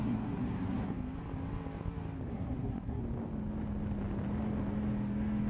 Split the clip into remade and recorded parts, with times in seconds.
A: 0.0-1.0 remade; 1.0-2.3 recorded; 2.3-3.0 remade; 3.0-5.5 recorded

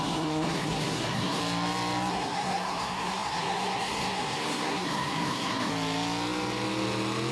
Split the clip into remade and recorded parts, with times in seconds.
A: 0.0-1.4 remade; 1.4-2.1 recorded; 2.1-5.7 remade; 5.7-7.3 recorded

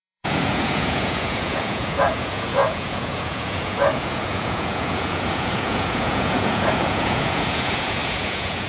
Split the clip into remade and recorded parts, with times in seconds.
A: 0.0-8.7 remade

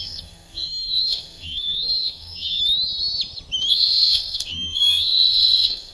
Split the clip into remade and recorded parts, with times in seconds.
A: 0.0-2.6 remade; 2.6-3.7 recorded; 3.7-5.9 remade